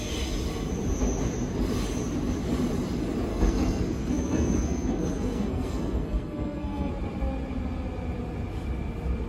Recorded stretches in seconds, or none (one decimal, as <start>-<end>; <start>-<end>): 0.0-3.3; 6.9-9.3